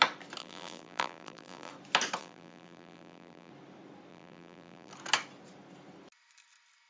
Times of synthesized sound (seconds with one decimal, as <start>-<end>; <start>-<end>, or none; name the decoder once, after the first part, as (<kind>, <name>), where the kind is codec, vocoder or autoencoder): 0.4-1.7 (vocoder, BigVGAN v2); 2.2-3.5; 4.1-4.9